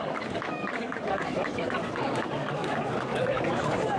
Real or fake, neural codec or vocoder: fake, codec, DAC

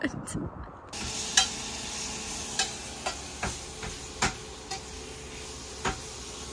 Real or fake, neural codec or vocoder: real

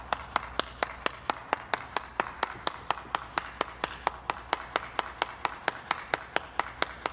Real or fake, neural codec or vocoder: real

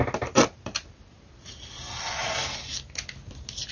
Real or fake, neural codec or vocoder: real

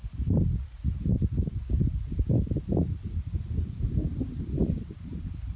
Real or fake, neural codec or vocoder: real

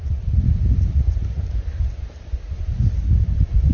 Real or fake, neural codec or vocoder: real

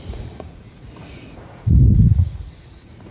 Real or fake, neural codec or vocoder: fake, vocoder, Vocos